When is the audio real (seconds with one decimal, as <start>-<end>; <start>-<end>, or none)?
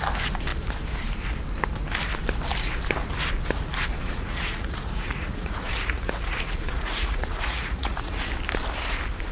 0.0-4.0; 8.2-9.3